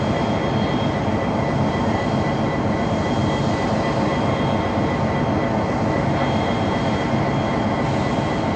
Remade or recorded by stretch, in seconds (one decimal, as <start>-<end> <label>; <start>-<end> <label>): 0.0-8.6 recorded